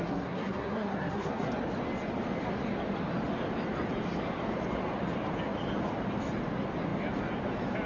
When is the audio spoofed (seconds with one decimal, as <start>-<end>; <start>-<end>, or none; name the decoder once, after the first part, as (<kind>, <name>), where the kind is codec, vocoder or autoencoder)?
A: 0.0-1.5 (codec, SNAC)